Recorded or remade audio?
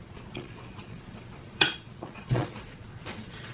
remade